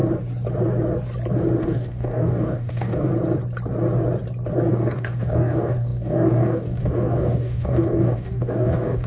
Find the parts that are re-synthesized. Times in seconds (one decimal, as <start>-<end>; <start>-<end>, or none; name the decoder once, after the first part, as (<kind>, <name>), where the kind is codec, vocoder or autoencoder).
1.6-3.1 (codec, DAC); 4.7-9.1